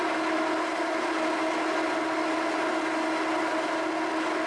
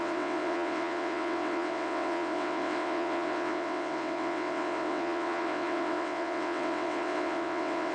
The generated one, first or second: second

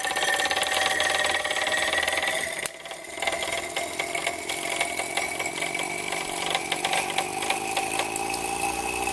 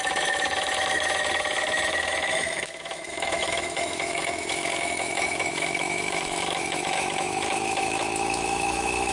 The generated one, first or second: second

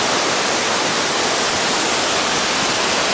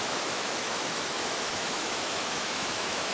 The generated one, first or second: second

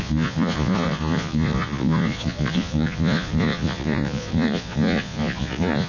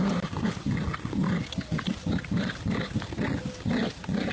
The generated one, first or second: first